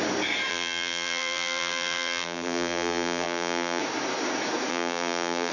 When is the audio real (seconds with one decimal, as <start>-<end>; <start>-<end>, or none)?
0.0-0.5; 3.8-4.7

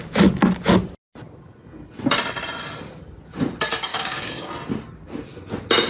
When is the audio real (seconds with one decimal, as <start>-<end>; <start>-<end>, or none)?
0.0-3.9; 4.5-5.9

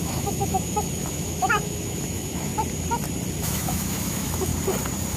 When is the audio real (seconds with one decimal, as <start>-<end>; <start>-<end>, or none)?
2.5-3.4; 4.5-5.2

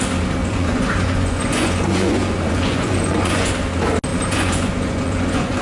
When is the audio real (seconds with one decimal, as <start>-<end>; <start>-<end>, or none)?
0.0-0.4; 3.5-4.1